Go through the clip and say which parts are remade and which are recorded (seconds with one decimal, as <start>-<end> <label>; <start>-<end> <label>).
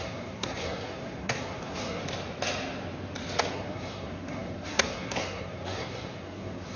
0.0-2.0 remade; 2.0-3.5 recorded; 3.5-6.8 remade